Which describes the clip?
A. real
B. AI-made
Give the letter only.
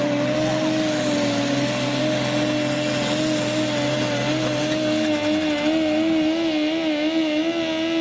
A